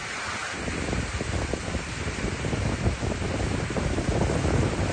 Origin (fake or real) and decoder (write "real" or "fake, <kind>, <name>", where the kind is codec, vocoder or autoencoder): real